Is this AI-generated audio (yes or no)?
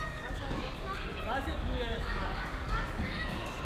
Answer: yes